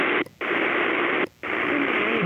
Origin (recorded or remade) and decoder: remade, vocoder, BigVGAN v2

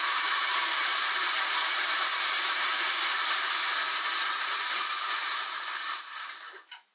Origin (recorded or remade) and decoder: remade, vocoder, BigVGAN v2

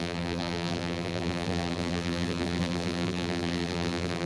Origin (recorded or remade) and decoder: remade, vocoder, BigVGAN v2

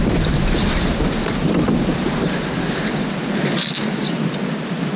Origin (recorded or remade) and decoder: remade, vocoder, BigVGAN v2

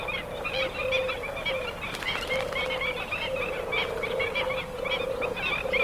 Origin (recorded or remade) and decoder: recorded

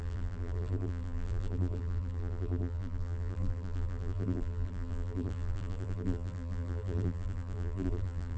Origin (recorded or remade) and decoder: remade, vocoder, BigVGAN v2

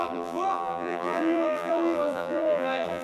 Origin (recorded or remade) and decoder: remade, vocoder, BigVGAN v2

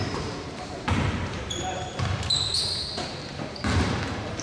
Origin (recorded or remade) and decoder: remade, vocoder, BigVGAN v2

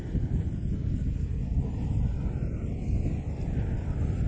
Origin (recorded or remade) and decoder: recorded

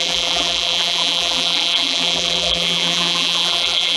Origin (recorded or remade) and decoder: remade, vocoder, BigVGAN v2